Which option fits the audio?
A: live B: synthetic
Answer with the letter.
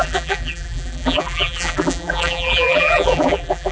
B